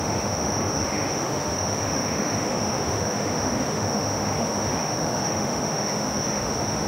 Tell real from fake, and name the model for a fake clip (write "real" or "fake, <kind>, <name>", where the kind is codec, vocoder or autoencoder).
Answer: fake, autoencoder, DAC-VAE